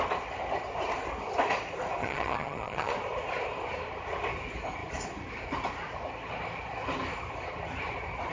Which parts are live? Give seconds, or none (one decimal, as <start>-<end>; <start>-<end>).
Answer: 0.0-2.0; 2.9-8.3